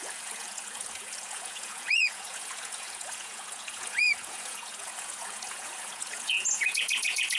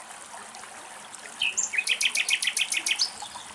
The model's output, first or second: first